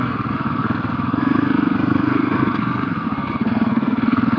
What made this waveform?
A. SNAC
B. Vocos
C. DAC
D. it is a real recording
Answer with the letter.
A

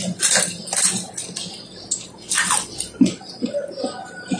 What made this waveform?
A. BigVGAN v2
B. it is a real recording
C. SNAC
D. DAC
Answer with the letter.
B